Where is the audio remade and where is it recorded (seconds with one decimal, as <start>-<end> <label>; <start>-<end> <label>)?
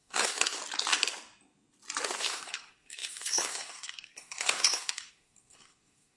0.0-0.6 remade; 0.6-2.2 recorded; 2.2-6.2 remade